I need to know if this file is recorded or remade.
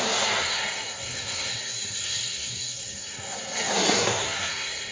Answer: remade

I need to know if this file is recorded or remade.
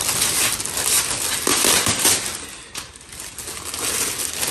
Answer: recorded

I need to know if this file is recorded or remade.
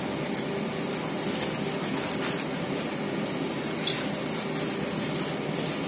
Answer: recorded